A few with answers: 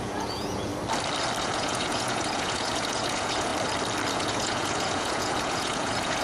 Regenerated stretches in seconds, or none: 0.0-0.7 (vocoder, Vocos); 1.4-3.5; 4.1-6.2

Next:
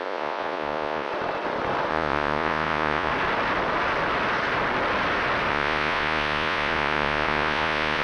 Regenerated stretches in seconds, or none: 0.0-1.1 (vocoder, Vocos); 1.9-3.1; 5.5-8.0

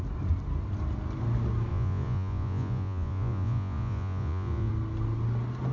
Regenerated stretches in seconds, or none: 1.7-4.7 (vocoder, Vocos)

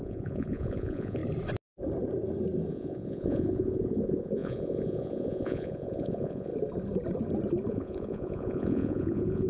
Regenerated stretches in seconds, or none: 0.0-1.2 (vocoder, Vocos); 2.7-6.5; 7.7-9.5

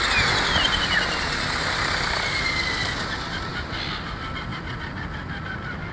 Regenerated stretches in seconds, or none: none

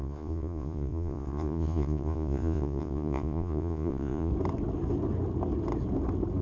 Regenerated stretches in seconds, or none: 0.0-4.3 (vocoder, Vocos)

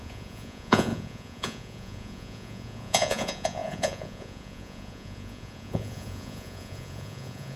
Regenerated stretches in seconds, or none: 0.0-7.6 (vocoder, Vocos)